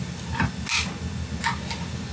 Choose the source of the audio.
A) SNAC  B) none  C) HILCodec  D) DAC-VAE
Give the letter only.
B